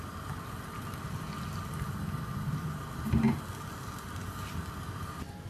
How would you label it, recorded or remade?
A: recorded